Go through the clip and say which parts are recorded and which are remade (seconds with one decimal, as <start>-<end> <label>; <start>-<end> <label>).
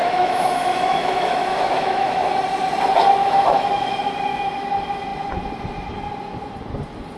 0.0-2.3 remade; 2.3-3.2 recorded; 3.2-3.8 remade; 3.8-7.2 recorded